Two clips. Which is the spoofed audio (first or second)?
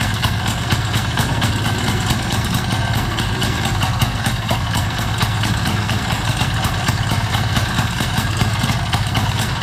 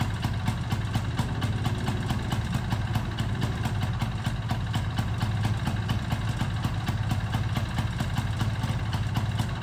first